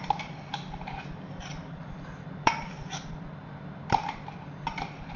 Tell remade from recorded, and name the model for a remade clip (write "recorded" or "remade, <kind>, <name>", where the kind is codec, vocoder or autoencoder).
remade, vocoder, BigVGAN v2